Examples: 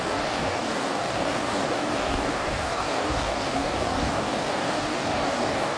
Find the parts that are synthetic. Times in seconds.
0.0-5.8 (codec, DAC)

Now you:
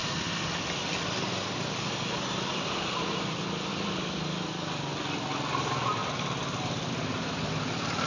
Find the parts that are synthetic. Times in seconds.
3.7-4.5 (vocoder, BigVGAN v2)

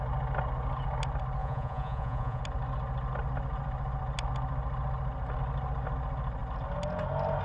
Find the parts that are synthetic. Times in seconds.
1.4-2.4 (vocoder, Vocos)

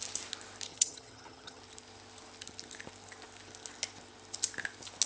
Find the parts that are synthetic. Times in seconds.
0.7-1.6 (vocoder, HiFi-GAN)

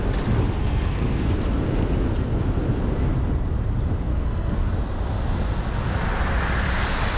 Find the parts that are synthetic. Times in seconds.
0.6-1.3 (codec, SNAC); 4.1-4.7

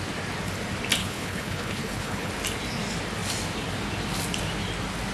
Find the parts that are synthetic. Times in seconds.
1.0-2.3 (codec, HILCodec)

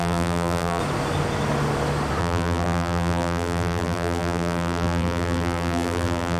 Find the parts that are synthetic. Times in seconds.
0.0-0.8 (vocoder, BigVGAN v2); 2.2-6.4

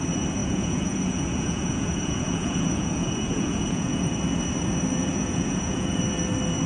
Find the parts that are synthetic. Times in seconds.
0.4-4.1 (vocoder, Vocos); 5.0-6.0